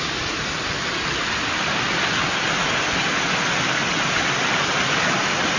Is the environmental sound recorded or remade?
recorded